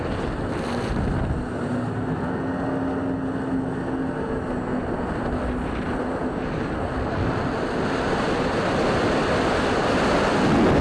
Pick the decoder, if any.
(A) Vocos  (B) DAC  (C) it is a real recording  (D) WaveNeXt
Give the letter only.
C